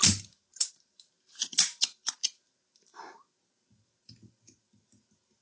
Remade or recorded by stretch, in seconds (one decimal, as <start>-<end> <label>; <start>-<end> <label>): 0.0-5.4 recorded